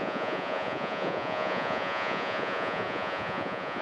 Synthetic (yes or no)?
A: yes